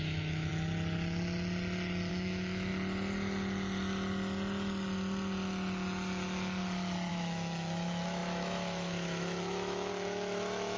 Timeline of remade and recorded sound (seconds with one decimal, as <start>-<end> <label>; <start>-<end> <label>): 0.0-0.5 remade; 0.5-2.1 recorded; 2.1-2.7 remade; 2.7-7.1 recorded; 7.1-10.8 remade